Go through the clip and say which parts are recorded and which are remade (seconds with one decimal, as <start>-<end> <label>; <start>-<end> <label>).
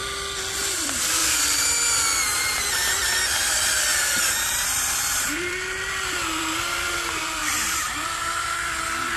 0.0-0.6 recorded; 0.6-1.2 remade; 1.2-3.5 recorded; 3.5-9.2 remade